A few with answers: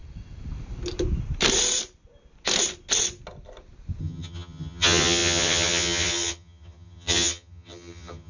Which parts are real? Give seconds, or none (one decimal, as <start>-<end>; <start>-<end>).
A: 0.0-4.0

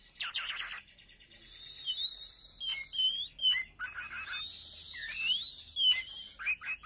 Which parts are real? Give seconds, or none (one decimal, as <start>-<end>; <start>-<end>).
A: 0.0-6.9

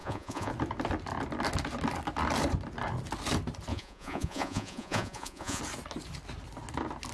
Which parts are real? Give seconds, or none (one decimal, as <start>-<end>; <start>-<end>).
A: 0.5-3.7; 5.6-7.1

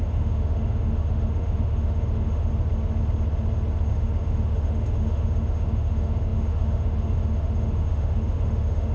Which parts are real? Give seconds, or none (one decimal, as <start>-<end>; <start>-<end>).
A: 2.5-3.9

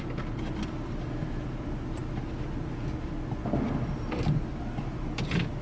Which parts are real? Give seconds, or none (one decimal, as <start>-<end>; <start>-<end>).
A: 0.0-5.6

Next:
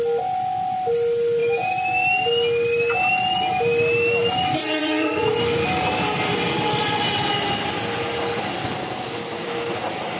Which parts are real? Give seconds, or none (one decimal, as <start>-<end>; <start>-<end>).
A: 0.0-4.6; 5.2-10.2

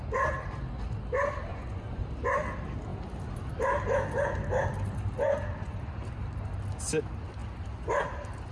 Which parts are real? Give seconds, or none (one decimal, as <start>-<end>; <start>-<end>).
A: 0.0-1.5; 2.0-8.5

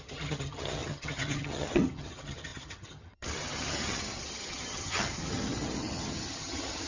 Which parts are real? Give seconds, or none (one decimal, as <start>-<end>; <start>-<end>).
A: none